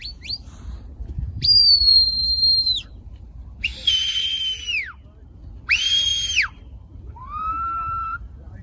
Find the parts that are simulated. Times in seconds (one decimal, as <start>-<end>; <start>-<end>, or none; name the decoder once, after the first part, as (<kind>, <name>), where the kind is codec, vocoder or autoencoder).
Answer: 0.0-3.7 (vocoder, BigVGAN v2); 5.6-8.6